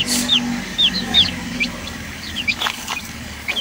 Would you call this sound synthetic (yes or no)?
yes